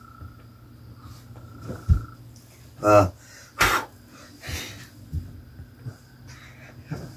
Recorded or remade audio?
recorded